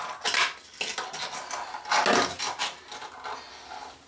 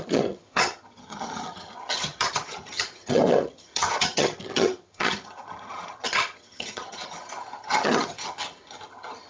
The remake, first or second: second